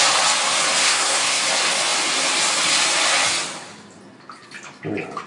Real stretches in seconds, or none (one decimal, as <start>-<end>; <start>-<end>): 0.0-0.8; 1.4-5.3